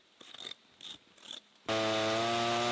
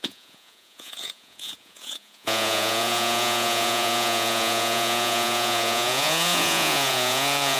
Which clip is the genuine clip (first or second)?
first